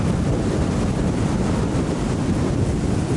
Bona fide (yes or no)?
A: no